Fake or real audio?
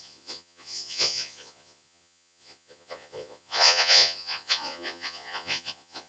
fake